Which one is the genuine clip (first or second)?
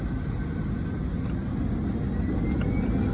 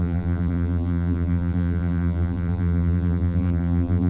first